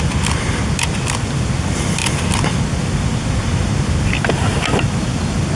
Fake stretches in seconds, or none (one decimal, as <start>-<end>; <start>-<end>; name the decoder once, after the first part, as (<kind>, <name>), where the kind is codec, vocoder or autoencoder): none